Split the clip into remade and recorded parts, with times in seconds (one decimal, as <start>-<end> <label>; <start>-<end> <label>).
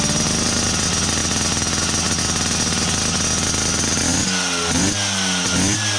0.0-6.0 recorded